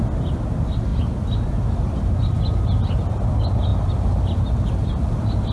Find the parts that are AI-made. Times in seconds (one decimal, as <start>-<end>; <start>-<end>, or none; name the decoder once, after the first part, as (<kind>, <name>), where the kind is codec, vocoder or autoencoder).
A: none